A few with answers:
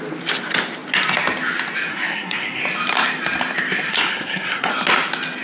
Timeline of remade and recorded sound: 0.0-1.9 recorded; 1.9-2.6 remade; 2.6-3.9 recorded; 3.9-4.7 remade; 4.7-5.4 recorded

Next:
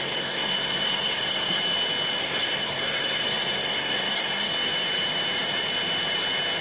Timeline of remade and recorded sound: 0.0-1.6 remade; 1.6-2.2 recorded; 2.2-4.5 remade; 4.5-6.6 recorded